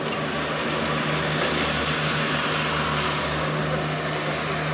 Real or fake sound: real